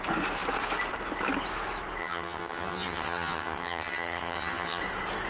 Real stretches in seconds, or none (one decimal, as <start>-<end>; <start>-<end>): 0.0-2.0; 4.8-5.3